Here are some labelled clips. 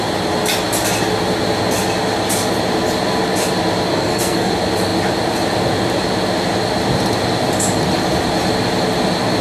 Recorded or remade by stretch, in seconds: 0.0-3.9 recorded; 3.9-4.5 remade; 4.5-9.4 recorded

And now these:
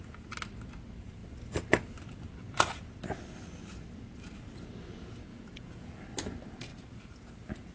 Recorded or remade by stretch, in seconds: 0.0-5.3 recorded; 5.3-5.9 remade; 5.9-7.7 recorded

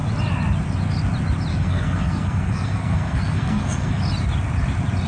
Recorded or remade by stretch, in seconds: 0.0-1.5 recorded; 1.5-4.0 remade; 4.0-5.1 recorded

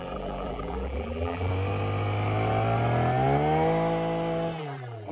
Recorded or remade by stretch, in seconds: 0.0-1.5 remade; 1.5-4.6 recorded; 4.6-5.1 remade

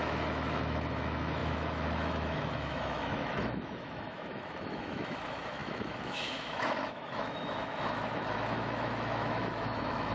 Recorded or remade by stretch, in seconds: 0.0-10.1 remade

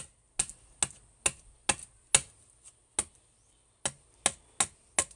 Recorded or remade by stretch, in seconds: 0.0-5.2 recorded

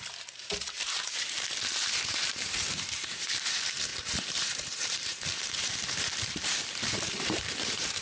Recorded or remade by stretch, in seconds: 0.0-8.0 remade

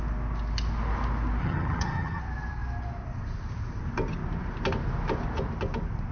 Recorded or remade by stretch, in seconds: 0.0-1.4 recorded; 1.4-2.2 remade; 2.2-6.1 recorded